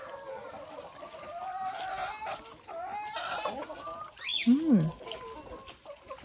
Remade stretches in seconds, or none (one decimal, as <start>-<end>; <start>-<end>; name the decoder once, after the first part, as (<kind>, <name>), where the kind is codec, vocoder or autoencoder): 0.0-2.0 (vocoder, BigVGAN v2); 5.7-6.2